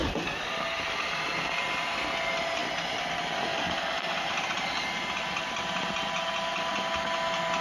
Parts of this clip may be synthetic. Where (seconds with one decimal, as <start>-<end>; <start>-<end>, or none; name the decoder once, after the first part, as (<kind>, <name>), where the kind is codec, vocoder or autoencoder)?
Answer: 0.0-1.2 (vocoder, BigVGAN v2); 2.6-6.8